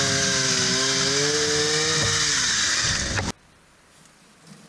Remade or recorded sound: recorded